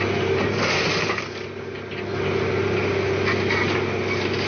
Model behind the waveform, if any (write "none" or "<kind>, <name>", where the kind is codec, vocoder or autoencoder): none